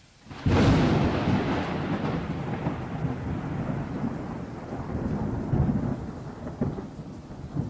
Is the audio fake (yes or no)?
no